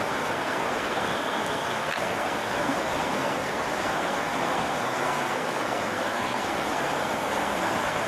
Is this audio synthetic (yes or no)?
yes